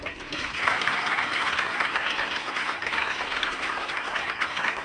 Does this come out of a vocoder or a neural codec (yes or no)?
yes